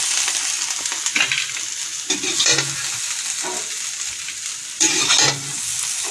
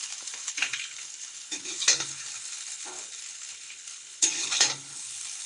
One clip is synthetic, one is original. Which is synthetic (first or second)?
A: second